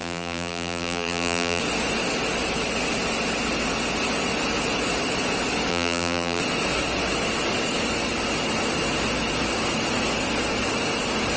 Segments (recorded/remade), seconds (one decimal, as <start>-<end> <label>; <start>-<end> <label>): 0.0-1.6 remade; 1.6-5.7 recorded; 5.7-6.4 remade; 6.4-11.4 recorded

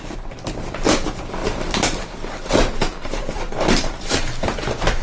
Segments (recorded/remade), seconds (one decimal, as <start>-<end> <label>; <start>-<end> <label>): 0.0-5.0 remade

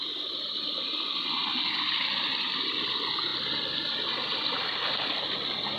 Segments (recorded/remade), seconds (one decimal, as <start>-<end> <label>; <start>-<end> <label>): 0.0-5.8 recorded

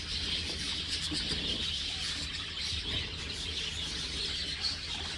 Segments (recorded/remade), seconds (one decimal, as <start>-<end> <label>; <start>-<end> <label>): 0.0-5.2 recorded

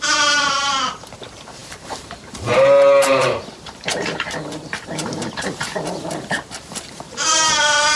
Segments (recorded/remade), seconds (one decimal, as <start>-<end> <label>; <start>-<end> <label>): 0.0-8.0 remade

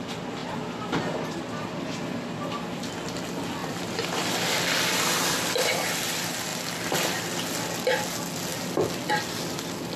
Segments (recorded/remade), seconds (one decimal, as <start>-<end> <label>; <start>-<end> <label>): 0.0-3.6 recorded; 3.6-5.9 remade; 5.9-6.5 recorded; 6.5-7.2 remade; 7.2-10.0 recorded